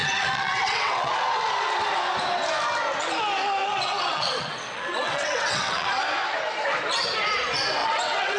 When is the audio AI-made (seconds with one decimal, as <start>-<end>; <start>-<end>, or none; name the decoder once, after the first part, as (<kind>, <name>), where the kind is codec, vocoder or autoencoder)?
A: 0.0-1.1 (vocoder, WaveNeXt); 3.6-6.0; 7.8-8.4